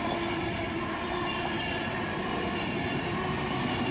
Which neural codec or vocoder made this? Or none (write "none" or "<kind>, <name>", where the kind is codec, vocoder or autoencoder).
none